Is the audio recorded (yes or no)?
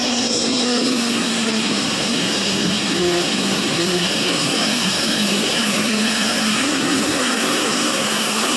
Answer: no